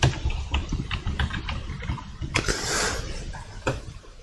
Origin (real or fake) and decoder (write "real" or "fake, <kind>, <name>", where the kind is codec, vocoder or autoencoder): fake, vocoder, BigVGAN v2